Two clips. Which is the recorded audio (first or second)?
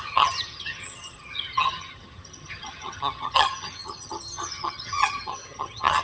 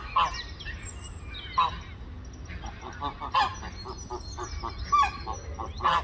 second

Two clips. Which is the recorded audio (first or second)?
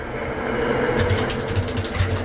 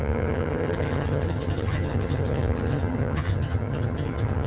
first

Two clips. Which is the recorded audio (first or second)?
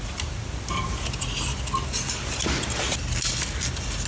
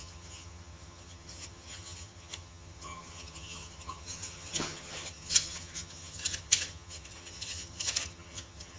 first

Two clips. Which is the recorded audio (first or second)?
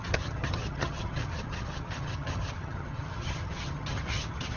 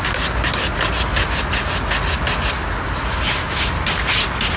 second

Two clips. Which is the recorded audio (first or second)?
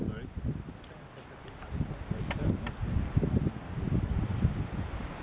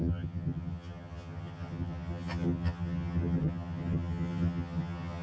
first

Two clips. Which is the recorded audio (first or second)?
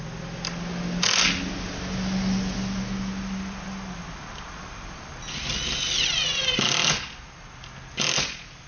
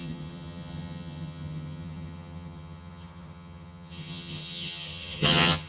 first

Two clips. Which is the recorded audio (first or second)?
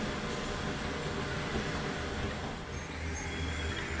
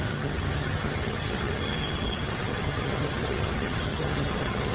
first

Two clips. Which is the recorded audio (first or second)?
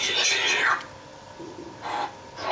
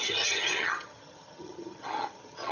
first